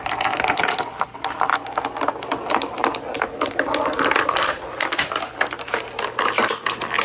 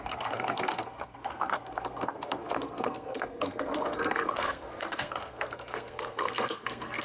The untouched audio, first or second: first